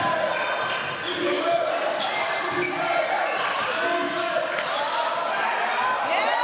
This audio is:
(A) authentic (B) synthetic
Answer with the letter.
A